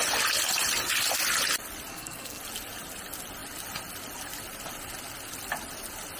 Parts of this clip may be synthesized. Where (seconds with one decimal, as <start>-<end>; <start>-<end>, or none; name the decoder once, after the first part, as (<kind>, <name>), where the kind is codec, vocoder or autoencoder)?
1.9-2.4 (codec, SNAC)